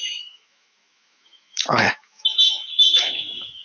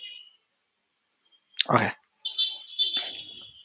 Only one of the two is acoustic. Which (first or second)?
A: second